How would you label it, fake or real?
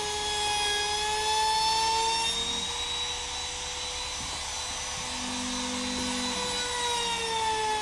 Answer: real